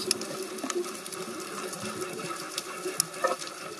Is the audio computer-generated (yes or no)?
no